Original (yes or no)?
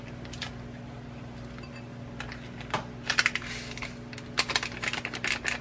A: yes